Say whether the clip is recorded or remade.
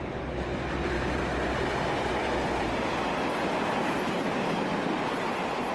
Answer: recorded